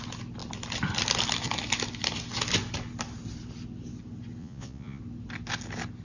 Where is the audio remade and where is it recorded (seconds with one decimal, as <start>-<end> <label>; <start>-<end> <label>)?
0.0-4.4 recorded; 4.4-5.0 remade; 5.0-6.0 recorded